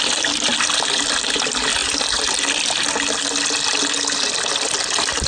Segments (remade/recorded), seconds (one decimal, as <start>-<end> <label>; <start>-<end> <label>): 0.0-5.3 recorded